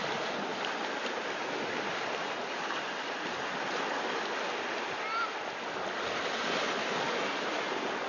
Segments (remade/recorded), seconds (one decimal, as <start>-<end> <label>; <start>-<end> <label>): 0.0-0.5 recorded; 0.5-1.3 remade; 1.3-8.1 recorded